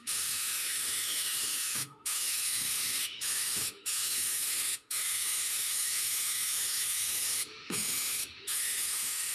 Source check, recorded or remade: remade